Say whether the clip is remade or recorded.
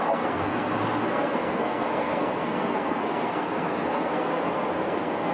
remade